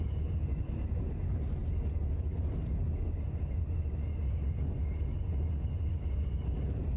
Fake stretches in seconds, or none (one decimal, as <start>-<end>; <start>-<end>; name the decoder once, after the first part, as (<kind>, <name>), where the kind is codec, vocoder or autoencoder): none